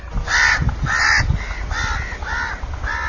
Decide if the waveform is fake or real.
real